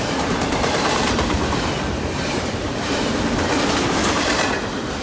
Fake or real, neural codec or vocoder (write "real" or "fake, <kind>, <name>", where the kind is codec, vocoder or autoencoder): fake, vocoder, BigVGAN v2